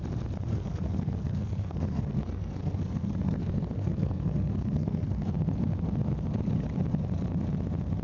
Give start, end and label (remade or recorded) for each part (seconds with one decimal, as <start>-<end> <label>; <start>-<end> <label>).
0.0-0.5 recorded; 0.5-5.3 remade; 5.3-8.0 recorded